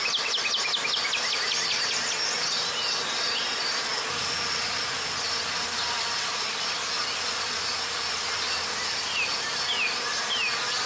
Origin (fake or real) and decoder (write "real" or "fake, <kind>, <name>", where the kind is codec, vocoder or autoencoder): real